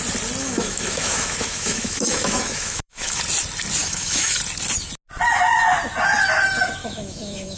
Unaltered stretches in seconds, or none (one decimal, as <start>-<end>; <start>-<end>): 0.0-0.4; 3.2-3.8; 4.4-6.8